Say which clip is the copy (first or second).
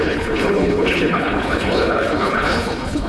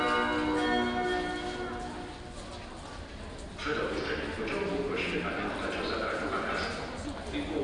first